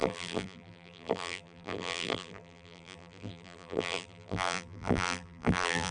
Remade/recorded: remade